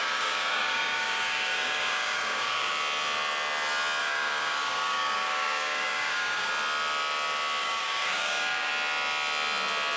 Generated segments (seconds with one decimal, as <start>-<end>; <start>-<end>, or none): 0.0-2.7; 4.0-6.5; 7.6-8.7